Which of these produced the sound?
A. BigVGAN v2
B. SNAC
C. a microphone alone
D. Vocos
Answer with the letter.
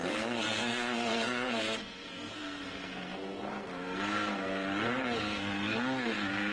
B